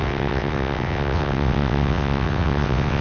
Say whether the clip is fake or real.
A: fake